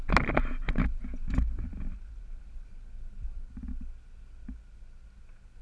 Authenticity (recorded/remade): recorded